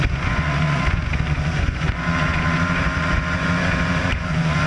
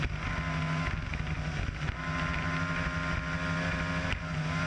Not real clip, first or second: first